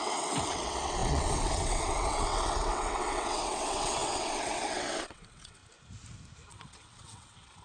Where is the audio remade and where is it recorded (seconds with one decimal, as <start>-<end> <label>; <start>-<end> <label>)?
0.0-5.6 remade; 5.6-6.5 recorded; 6.5-7.6 remade